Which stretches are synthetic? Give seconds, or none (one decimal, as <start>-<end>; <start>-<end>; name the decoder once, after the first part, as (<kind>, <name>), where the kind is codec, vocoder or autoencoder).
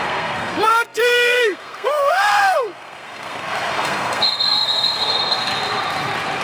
0.0-5.5 (codec, SNAC)